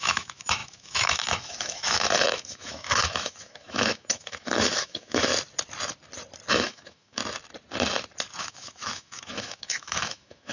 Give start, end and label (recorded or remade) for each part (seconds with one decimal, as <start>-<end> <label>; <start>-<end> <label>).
0.0-5.3 remade; 5.3-6.5 recorded; 6.5-7.2 remade; 7.2-8.4 recorded; 8.4-10.5 remade